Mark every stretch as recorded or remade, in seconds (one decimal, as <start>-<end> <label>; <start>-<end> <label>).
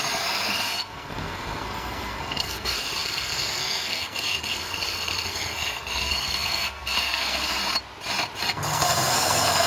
0.0-7.6 remade; 7.6-8.4 recorded; 8.4-9.7 remade